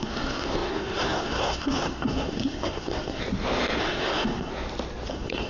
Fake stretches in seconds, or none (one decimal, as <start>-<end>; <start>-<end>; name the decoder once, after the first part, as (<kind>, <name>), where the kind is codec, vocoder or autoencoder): 0.0-3.2 (codec, SNAC); 3.8-4.5; 5.1-5.5